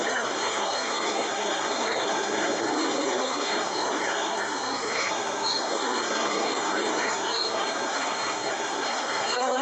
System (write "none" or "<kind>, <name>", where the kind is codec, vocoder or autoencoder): codec, SNAC